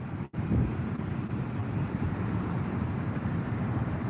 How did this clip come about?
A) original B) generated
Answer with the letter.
B